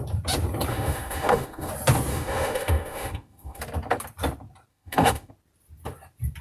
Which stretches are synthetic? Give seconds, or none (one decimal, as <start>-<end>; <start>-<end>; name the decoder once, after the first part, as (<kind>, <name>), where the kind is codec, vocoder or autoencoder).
0.7-1.7 (autoencoder, DAC-VAE); 2.1-3.6; 4.7-5.3